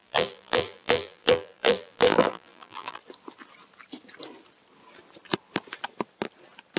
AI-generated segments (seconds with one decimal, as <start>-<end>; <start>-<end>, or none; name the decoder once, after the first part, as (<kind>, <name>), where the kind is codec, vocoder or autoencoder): 0.0-3.0 (vocoder, BigVGAN v2)